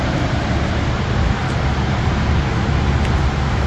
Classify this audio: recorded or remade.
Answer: recorded